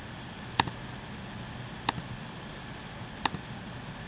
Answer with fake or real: real